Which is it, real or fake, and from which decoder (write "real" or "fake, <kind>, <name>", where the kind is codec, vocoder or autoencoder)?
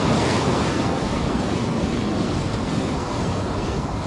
fake, codec, SNAC